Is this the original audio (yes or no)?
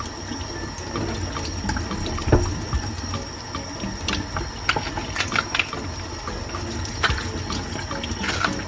yes